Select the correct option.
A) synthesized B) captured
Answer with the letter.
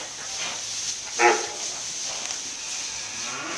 B